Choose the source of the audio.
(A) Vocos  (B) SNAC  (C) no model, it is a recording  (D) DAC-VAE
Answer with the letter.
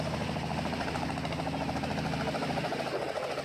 C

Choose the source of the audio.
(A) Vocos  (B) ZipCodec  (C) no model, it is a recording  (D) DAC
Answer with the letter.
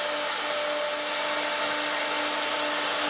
C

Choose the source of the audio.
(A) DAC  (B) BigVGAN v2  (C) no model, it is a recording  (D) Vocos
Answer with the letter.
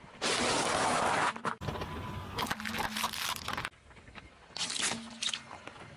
C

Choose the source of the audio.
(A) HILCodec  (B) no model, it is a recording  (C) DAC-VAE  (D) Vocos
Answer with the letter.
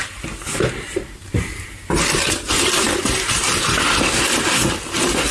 B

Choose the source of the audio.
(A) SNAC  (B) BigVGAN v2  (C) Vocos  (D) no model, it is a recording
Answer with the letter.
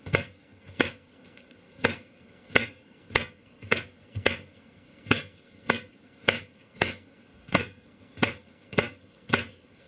A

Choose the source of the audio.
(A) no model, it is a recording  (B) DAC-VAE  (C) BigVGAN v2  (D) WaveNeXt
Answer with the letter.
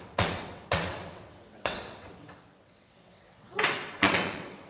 D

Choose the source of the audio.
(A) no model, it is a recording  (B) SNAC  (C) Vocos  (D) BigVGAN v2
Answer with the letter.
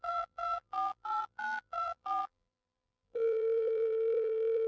D